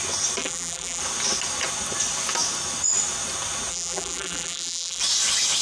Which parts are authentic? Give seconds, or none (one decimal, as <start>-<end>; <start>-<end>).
0.0-0.4; 1.0-3.7; 5.0-5.6